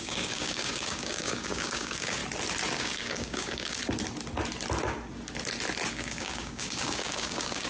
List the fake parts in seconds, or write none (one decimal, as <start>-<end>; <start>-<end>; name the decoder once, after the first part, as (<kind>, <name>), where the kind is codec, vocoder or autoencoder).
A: 0.0-2.2 (codec, DAC); 2.8-3.8; 5.9-7.7